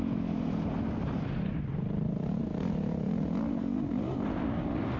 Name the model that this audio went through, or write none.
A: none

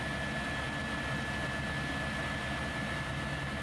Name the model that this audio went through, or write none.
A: none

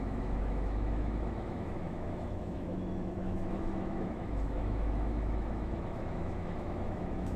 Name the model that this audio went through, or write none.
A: autoencoder, DAC-VAE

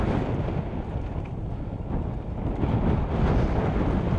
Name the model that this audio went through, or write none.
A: none